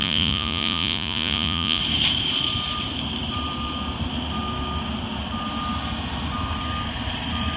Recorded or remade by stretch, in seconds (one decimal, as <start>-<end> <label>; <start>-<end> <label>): 0.0-1.8 remade; 1.8-7.6 recorded